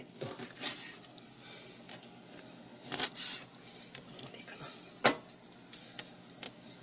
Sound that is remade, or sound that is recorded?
recorded